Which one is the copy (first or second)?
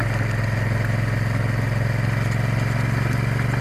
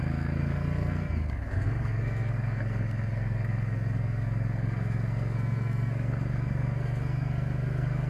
second